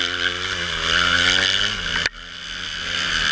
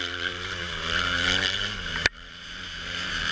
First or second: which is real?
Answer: first